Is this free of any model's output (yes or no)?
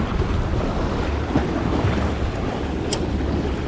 yes